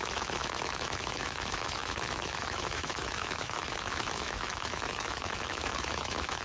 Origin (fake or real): fake